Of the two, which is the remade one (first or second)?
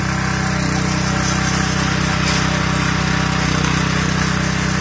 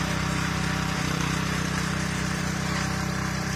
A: second